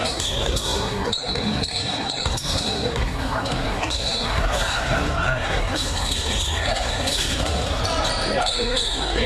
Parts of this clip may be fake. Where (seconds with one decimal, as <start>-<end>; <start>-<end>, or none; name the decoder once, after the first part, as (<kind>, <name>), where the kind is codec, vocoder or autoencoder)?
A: 0.0-7.8 (codec, SNAC); 8.4-9.3